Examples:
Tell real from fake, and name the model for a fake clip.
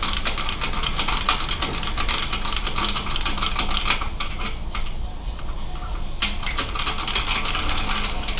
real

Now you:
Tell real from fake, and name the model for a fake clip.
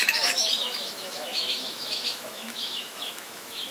fake, autoencoder, DAC-VAE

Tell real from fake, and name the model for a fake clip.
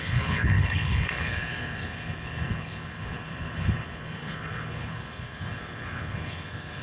fake, codec, HILCodec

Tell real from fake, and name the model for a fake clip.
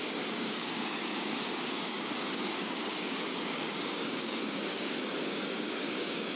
fake, codec, DAC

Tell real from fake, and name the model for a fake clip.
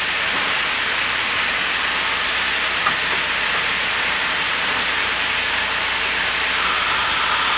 real